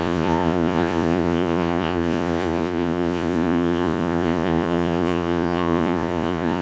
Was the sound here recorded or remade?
remade